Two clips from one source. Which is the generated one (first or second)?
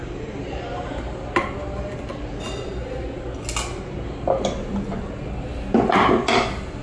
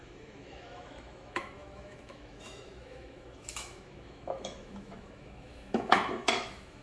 second